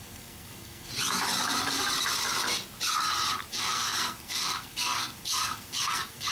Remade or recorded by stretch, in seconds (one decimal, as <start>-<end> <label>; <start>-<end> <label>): 0.0-0.9 remade; 0.9-3.5 recorded; 3.5-6.3 remade

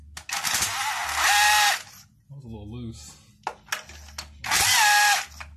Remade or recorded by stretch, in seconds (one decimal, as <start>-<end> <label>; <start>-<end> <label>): 0.0-5.6 recorded